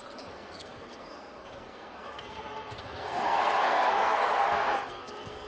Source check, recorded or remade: remade